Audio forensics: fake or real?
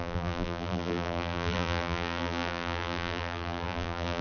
fake